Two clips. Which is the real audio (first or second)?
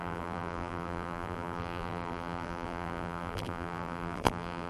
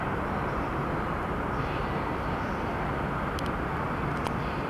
second